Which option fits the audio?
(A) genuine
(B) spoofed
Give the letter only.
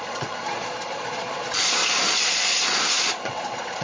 B